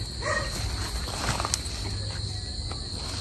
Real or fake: real